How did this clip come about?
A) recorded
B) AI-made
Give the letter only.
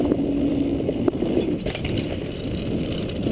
A